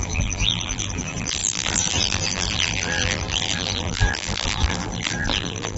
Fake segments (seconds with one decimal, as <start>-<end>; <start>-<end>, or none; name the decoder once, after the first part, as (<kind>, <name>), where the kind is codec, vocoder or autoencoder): 0.0-5.8 (vocoder, BigVGAN v2)